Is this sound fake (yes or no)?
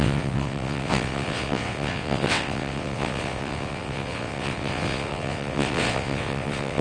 yes